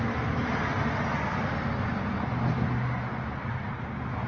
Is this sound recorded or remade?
recorded